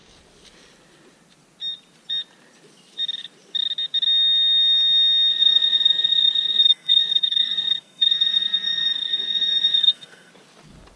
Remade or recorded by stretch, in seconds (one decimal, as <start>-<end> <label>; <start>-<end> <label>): 0.0-5.3 recorded; 5.3-10.3 remade; 10.3-11.0 recorded